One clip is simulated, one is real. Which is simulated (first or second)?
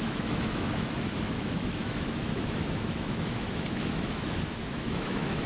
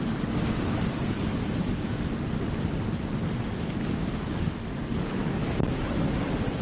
first